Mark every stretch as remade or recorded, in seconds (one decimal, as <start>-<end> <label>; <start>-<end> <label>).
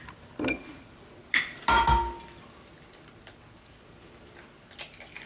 0.0-5.3 recorded